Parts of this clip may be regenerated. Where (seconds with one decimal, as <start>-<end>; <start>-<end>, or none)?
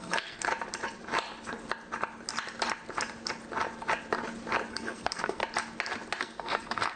0.0-0.5; 4.7-5.4; 6.2-7.0